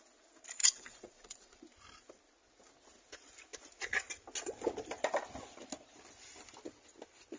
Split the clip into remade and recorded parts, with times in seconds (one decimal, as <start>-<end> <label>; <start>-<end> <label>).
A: 0.0-0.6 recorded; 0.6-1.6 remade; 1.6-7.4 recorded